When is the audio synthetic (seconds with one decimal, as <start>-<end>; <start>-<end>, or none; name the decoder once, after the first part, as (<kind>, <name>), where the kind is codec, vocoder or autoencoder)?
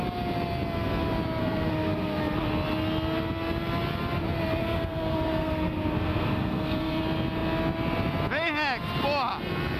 1.4-2.2 (codec, SNAC); 4.6-7.0